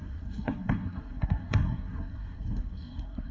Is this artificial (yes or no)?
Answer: yes